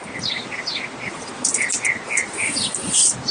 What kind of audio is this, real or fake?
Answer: real